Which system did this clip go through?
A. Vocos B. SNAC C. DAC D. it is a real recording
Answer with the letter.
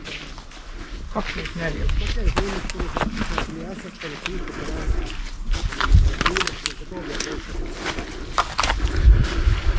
D